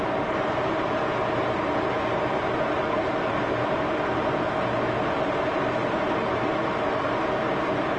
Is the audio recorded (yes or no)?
yes